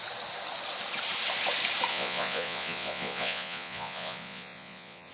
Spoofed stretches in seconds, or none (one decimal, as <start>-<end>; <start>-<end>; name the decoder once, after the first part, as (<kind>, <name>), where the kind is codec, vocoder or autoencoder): 1.9-5.1 (vocoder, Vocos)